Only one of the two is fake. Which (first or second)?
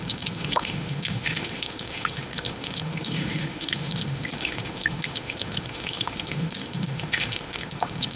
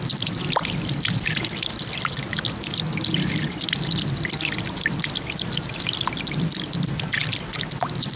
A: first